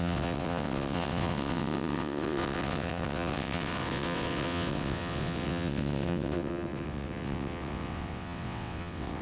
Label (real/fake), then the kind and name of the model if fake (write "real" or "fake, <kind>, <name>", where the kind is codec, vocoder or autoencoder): fake, vocoder, WaveNeXt